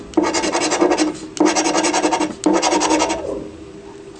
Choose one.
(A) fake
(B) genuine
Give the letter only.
B